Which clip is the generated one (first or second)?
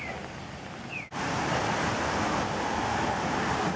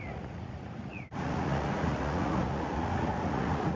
second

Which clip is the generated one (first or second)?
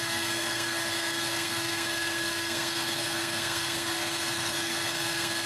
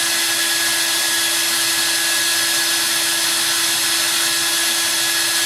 first